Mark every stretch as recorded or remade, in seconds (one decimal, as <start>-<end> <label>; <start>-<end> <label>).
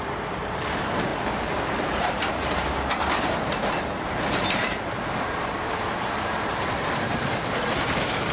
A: 0.0-8.3 remade